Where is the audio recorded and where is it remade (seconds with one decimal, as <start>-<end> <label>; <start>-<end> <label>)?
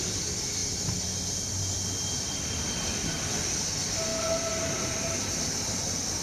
0.0-6.2 recorded